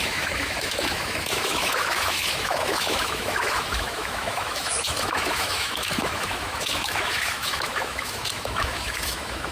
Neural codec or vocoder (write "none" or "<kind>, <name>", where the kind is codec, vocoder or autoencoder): autoencoder, DAC-VAE